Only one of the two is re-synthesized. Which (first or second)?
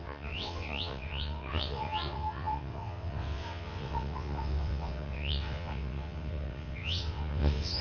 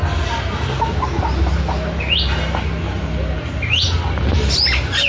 first